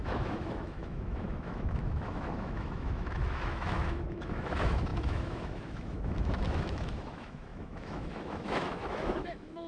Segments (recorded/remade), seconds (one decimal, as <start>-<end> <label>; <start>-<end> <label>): 0.0-9.7 remade